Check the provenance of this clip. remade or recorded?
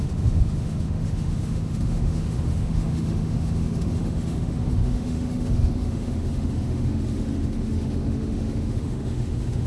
remade